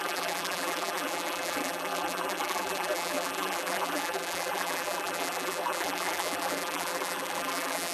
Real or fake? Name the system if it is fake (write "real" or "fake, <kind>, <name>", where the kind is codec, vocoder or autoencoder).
fake, vocoder, BigVGAN v2